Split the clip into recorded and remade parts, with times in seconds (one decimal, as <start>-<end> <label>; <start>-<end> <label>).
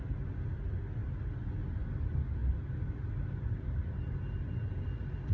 0.0-5.3 recorded